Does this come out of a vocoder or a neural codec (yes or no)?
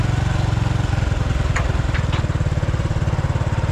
no